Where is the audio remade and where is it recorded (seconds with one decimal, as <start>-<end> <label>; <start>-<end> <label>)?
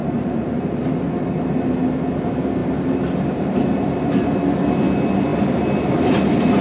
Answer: 0.0-0.9 remade; 0.9-6.6 recorded